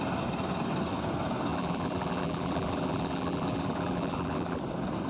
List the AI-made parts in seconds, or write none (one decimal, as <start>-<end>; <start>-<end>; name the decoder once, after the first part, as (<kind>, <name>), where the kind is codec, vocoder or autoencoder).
1.5-4.6 (vocoder, BigVGAN v2)